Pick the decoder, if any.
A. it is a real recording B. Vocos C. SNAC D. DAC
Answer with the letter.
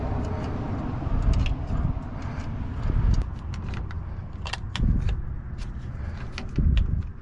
A